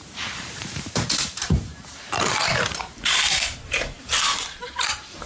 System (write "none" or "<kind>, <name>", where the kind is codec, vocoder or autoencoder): vocoder, BigVGAN v2